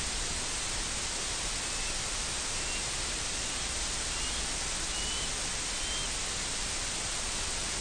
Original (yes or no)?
yes